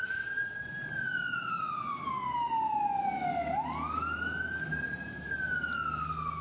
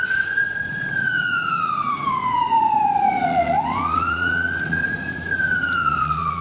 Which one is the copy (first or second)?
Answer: second